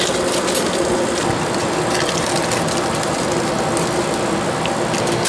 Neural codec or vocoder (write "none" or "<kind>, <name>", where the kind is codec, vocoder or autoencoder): none